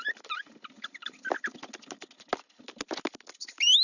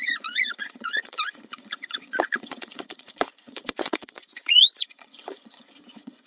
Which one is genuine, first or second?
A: first